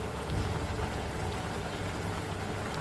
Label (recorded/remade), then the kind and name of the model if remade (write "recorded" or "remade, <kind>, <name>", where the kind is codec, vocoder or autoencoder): recorded